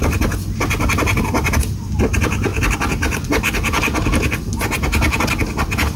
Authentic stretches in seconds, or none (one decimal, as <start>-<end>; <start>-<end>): 0.0-6.0